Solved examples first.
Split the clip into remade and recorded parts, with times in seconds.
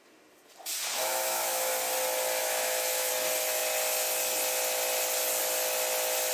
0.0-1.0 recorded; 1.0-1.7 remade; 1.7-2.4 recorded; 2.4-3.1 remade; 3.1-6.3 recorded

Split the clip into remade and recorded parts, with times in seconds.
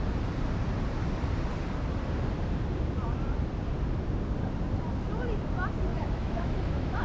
0.0-5.9 recorded; 5.9-7.0 remade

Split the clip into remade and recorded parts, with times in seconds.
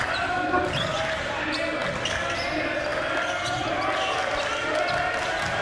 0.0-5.6 recorded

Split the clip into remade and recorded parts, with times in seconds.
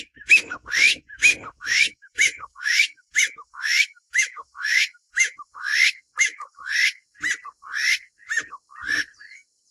0.0-5.7 remade; 5.7-6.2 recorded; 6.2-6.7 remade; 6.7-9.7 recorded